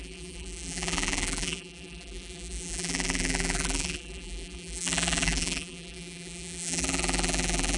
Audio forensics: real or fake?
fake